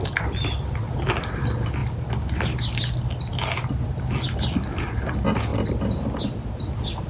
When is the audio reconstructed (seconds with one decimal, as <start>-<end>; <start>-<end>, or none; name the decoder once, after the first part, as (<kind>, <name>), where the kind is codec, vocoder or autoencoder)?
none